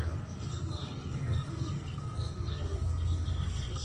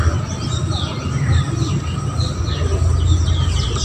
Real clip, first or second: second